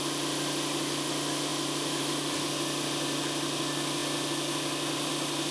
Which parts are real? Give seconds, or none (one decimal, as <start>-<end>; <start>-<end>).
0.0-5.5